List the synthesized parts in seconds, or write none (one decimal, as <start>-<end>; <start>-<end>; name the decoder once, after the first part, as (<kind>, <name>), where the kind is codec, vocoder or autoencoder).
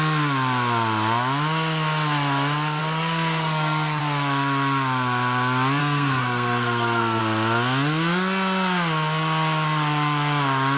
2.8-4.0 (codec, SNAC); 5.8-7.2